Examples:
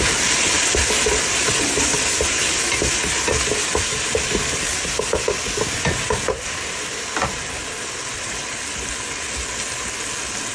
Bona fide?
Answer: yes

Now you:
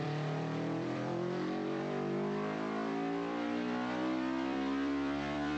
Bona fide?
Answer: no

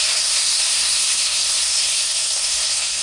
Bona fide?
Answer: no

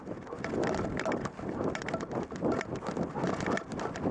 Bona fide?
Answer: yes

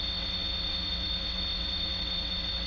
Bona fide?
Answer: no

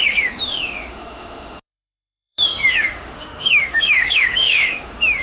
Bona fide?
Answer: no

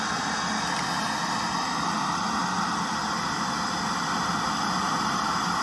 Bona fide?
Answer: yes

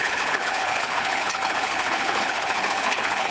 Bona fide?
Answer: no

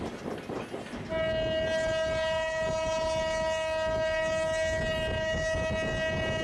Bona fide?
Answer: yes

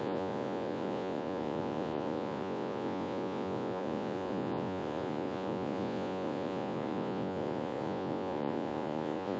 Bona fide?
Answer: no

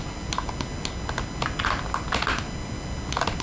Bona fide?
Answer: yes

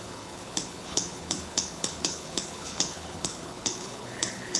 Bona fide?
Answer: no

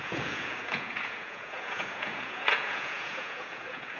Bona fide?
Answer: no